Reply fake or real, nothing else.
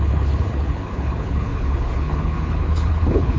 fake